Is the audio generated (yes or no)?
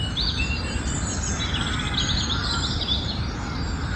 no